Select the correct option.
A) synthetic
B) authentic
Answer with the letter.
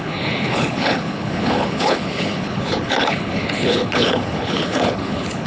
A